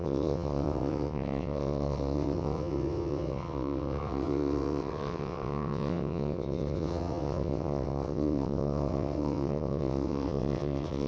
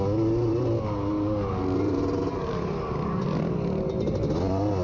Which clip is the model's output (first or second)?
first